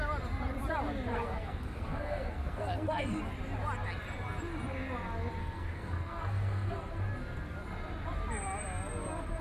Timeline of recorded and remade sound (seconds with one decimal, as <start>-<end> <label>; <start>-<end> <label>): 0.0-1.1 recorded; 1.1-3.2 remade; 3.2-5.4 recorded; 5.4-7.0 remade; 7.0-9.4 recorded

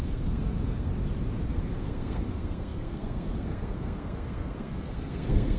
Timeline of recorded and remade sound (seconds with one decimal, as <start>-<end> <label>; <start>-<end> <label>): 0.0-0.9 remade; 0.9-1.5 recorded; 1.5-5.6 remade

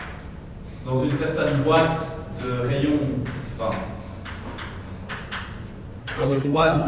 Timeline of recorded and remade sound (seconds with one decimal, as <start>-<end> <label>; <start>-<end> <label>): 0.0-6.0 recorded; 6.0-6.9 remade